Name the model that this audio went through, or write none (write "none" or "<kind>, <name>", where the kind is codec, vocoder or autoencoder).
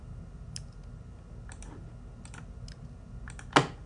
none